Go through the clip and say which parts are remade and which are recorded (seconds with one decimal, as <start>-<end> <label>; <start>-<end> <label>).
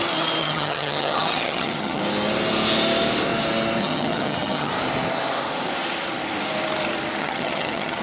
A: 0.0-0.4 recorded; 0.4-2.0 remade; 2.0-3.8 recorded; 3.8-4.7 remade; 4.7-7.2 recorded; 7.2-8.0 remade